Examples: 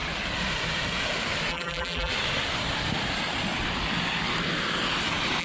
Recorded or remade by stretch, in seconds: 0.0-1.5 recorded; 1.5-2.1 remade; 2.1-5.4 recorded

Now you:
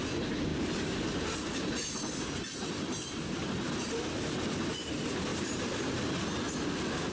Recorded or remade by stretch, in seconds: 0.0-5.3 recorded; 5.3-6.2 remade; 6.2-7.1 recorded

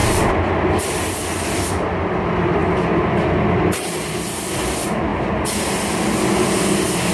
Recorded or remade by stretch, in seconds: 0.0-1.2 remade; 1.2-2.6 recorded; 2.6-3.1 remade; 3.1-7.1 recorded

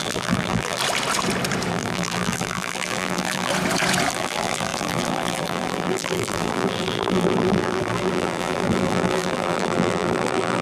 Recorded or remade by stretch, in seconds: 0.0-0.8 remade; 0.8-1.7 recorded; 1.7-3.5 remade; 3.5-4.1 recorded; 4.1-10.6 remade

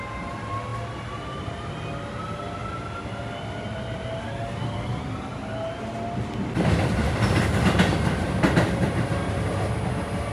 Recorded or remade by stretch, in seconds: 0.0-10.3 recorded

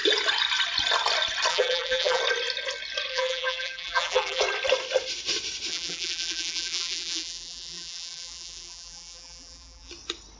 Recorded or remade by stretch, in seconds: 0.0-1.5 recorded; 1.5-2.2 remade; 2.2-3.1 recorded; 3.1-4.4 remade; 4.4-5.7 recorded; 5.7-9.9 remade; 9.9-10.4 recorded